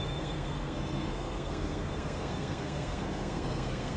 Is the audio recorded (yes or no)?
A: no